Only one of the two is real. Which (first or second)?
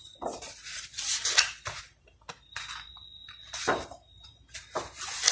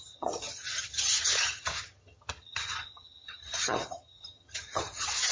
first